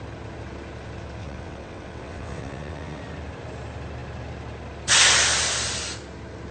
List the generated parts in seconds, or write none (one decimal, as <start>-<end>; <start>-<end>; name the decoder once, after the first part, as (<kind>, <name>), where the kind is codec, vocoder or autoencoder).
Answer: 1.2-3.0 (vocoder, WaveNeXt)